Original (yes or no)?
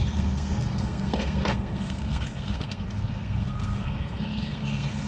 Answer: no